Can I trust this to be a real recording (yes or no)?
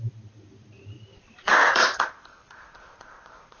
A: no